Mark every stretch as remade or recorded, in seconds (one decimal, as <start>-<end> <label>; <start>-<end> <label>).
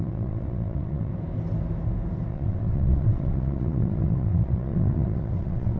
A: 0.0-1.1 remade; 1.1-2.3 recorded; 2.3-5.8 remade